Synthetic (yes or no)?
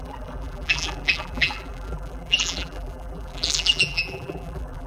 yes